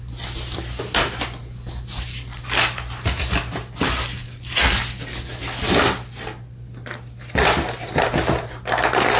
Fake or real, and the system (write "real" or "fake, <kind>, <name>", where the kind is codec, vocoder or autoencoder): real